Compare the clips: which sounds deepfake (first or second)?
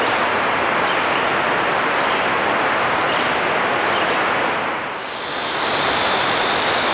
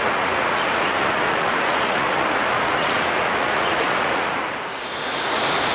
second